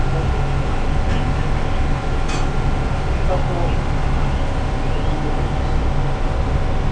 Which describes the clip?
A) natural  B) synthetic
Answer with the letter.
A